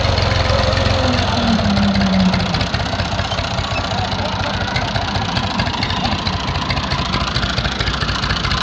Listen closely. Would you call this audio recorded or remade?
recorded